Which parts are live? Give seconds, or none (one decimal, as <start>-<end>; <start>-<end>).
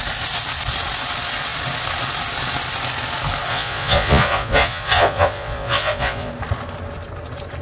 0.0-3.5; 6.3-7.6